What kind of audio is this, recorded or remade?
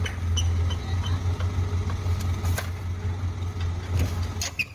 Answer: recorded